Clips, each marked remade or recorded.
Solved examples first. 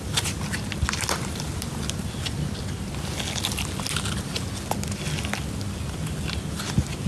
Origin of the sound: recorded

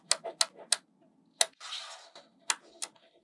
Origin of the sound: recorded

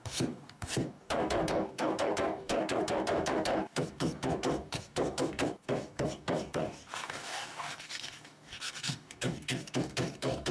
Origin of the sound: remade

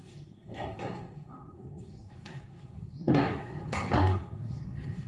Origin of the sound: remade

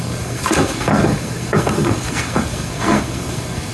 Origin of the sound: remade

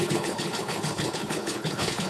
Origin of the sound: remade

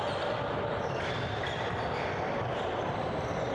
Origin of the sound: recorded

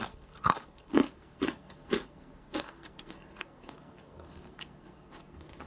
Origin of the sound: remade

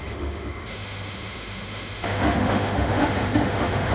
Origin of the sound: remade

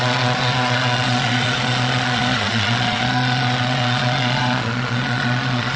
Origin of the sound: remade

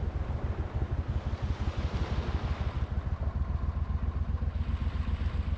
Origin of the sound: recorded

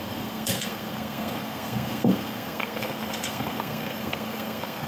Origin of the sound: remade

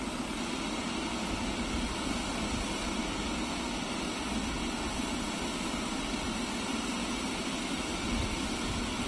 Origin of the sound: recorded